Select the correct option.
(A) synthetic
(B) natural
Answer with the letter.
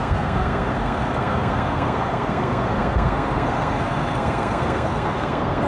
A